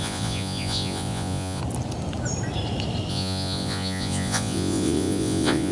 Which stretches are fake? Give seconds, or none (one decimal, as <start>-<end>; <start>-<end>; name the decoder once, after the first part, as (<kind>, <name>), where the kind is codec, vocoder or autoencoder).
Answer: 0.0-1.6 (vocoder, Vocos); 3.1-5.7